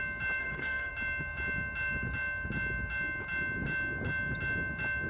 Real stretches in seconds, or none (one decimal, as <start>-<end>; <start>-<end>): 0.0-0.4; 0.9-5.1